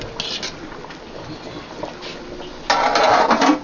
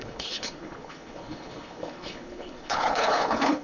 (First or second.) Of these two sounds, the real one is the first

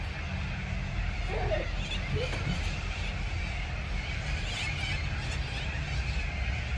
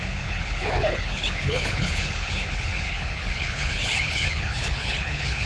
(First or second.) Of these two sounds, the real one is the first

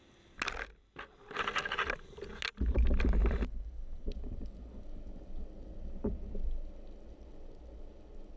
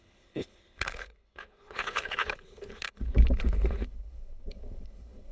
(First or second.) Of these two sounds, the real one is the first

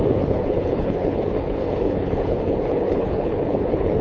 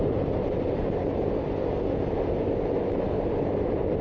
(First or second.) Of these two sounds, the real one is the second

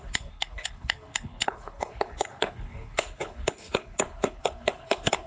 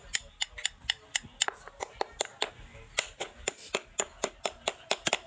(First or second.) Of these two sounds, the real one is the second